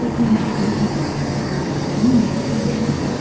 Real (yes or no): no